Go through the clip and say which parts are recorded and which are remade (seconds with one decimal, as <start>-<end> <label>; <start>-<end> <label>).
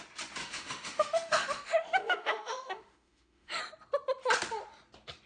0.0-0.4 recorded; 0.4-3.6 remade; 3.6-5.3 recorded